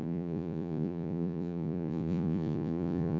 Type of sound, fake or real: fake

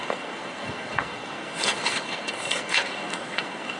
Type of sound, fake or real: fake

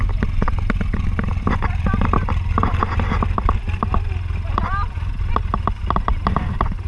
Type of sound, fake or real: real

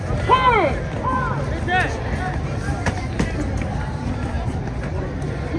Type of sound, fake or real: real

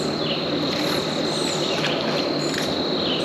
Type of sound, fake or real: real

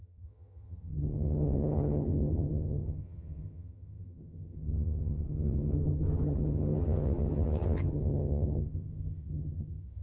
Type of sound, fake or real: fake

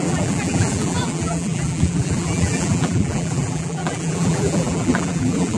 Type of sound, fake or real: fake